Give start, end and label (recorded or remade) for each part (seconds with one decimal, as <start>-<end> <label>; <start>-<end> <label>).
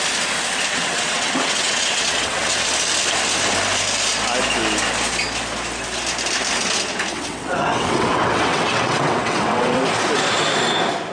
0.0-0.7 recorded; 0.7-2.7 remade; 2.7-7.1 recorded; 7.1-9.8 remade; 9.8-11.1 recorded